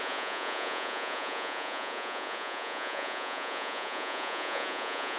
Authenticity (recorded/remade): remade